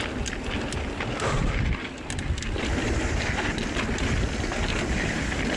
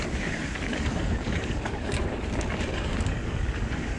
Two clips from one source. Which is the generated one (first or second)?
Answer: second